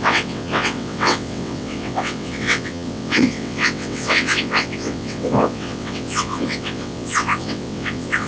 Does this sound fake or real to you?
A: fake